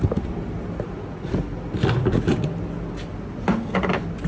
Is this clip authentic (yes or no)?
yes